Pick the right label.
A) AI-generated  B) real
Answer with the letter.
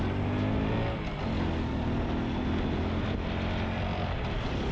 B